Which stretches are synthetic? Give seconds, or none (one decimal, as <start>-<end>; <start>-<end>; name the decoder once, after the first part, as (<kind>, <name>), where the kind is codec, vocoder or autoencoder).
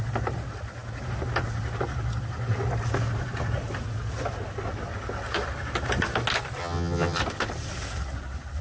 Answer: 6.6-7.2 (vocoder, HiFi-GAN)